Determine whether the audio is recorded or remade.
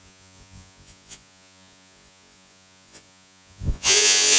remade